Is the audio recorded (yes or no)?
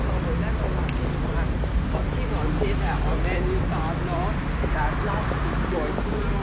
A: yes